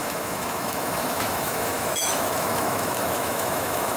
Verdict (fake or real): fake